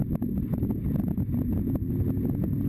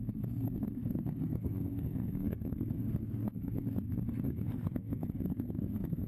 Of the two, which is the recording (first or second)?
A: first